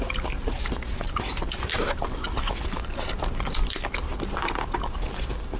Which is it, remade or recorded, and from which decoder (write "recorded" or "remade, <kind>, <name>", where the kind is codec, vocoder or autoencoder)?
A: recorded